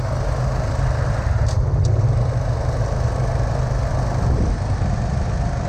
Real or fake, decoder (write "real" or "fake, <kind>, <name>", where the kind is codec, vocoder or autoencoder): real